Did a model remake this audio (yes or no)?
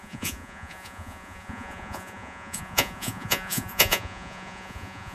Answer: yes